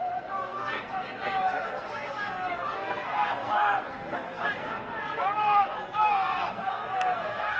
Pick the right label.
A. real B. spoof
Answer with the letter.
B